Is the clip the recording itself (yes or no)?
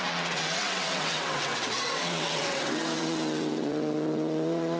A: no